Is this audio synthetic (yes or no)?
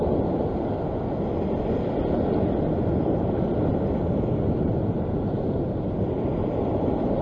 no